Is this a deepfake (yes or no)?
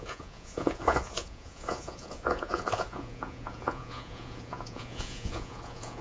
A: yes